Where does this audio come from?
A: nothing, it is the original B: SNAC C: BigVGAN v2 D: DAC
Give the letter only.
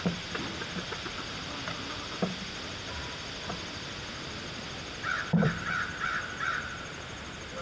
C